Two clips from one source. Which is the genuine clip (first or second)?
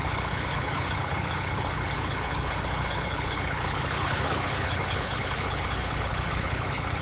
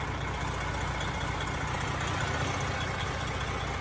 second